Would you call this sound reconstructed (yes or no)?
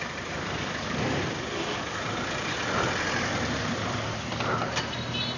no